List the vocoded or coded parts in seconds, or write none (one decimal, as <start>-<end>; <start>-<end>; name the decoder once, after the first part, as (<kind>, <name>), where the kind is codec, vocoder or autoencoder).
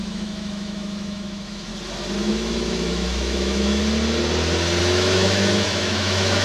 0.0-1.7 (autoencoder, DAC-VAE); 2.2-3.8; 4.8-6.4